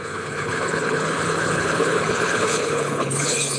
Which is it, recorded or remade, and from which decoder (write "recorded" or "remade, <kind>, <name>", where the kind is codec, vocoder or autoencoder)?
remade, codec, HILCodec